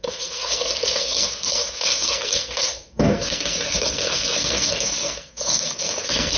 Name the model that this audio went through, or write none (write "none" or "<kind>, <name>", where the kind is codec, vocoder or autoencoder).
codec, SNAC